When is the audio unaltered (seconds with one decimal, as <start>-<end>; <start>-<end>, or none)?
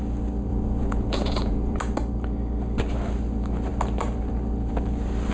0.0-0.5; 1.8-5.3